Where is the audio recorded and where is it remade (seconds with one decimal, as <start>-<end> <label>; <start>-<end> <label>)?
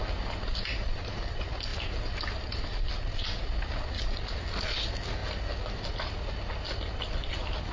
0.0-7.7 recorded